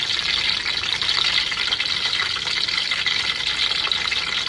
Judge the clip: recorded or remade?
recorded